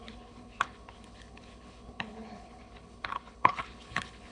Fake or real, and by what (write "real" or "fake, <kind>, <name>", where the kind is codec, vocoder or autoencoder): fake, codec, HILCodec